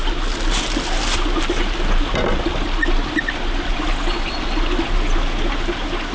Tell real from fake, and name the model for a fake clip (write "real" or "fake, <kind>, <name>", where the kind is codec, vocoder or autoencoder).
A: real